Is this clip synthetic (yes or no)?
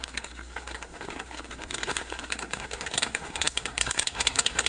yes